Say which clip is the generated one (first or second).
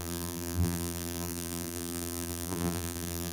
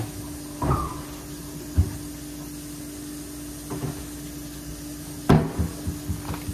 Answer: first